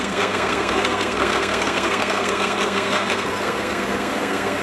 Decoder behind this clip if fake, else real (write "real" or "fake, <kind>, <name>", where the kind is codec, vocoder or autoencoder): fake, codec, SNAC